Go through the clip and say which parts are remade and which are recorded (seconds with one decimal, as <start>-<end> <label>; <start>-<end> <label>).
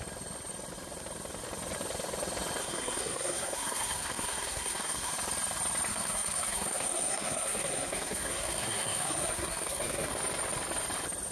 0.0-2.6 recorded; 2.6-5.1 remade; 5.1-5.9 recorded; 5.9-10.1 remade; 10.1-11.3 recorded